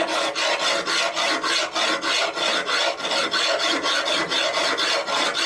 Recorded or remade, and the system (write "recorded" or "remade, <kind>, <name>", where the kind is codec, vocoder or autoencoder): recorded